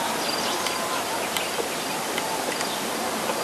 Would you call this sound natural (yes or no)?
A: yes